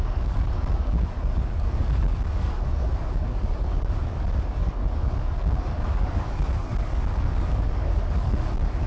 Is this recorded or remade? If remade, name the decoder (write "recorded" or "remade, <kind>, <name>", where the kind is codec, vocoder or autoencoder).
remade, codec, DAC